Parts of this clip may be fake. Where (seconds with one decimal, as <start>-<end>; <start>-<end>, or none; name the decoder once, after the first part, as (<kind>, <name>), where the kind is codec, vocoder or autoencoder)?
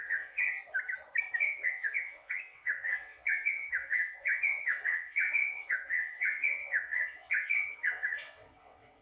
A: 0.0-0.6 (vocoder, WaveNeXt); 1.4-9.0